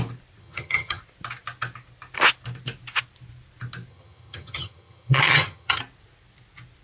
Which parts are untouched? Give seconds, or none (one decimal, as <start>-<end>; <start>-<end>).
0.0-0.4; 1.0-3.9; 5.8-6.8